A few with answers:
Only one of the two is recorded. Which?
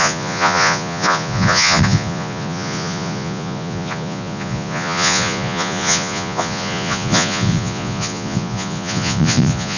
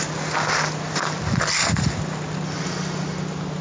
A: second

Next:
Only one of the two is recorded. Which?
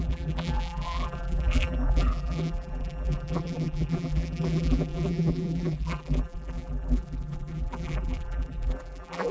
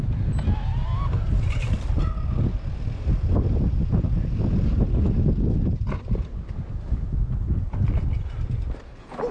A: second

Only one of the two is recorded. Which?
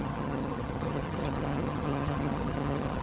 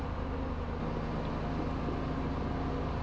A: second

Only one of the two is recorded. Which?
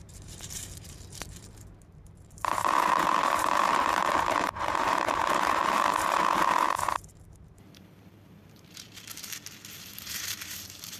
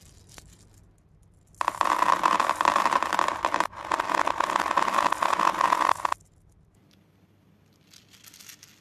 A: second